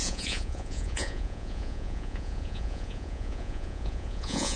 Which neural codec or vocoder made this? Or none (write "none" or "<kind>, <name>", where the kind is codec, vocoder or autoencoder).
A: vocoder, Vocos